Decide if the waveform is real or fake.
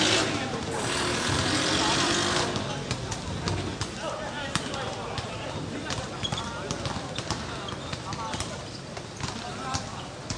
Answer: real